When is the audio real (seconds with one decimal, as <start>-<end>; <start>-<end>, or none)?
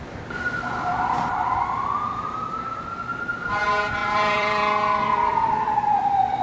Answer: 0.0-4.0